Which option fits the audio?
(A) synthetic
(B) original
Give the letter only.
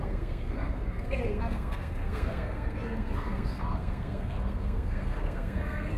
A